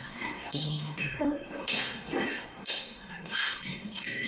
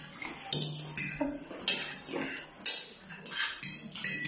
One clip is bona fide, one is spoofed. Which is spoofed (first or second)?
first